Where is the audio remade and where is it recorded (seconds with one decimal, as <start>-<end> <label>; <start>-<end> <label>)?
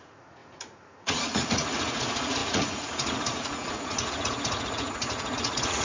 0.0-5.8 remade